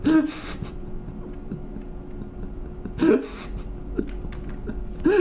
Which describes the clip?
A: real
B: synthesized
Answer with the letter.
A